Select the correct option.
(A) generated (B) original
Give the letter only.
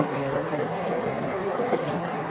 A